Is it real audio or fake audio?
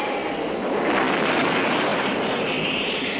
real